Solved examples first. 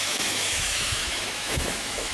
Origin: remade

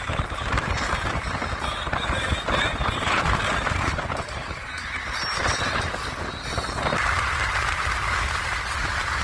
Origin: recorded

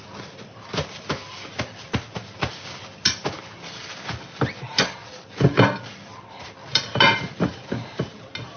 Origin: recorded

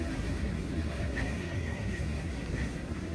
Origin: remade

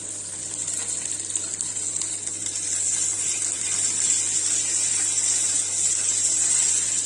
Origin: recorded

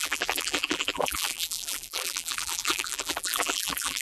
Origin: remade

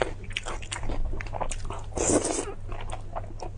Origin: recorded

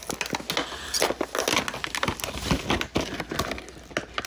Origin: recorded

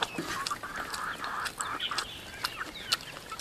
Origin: recorded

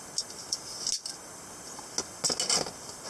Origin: recorded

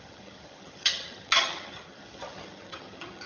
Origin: remade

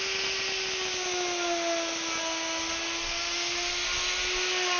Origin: recorded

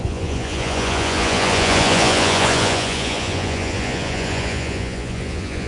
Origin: remade